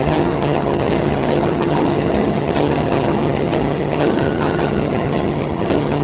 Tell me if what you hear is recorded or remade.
remade